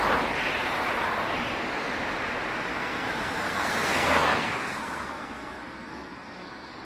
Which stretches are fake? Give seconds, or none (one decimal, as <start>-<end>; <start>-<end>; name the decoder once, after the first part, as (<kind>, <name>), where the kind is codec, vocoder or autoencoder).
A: 2.7-6.8 (codec, SNAC)